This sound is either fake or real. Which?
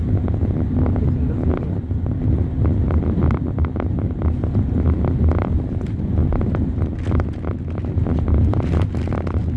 real